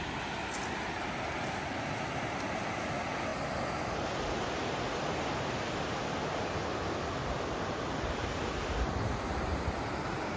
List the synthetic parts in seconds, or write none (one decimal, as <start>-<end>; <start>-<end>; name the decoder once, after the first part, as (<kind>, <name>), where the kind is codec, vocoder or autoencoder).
none